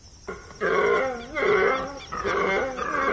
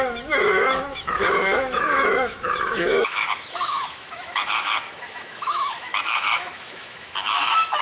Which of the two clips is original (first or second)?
first